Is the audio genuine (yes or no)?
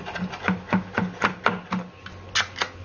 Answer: yes